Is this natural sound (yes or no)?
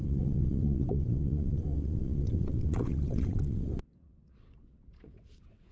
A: no